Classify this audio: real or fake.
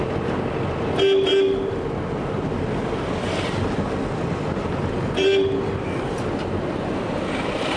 real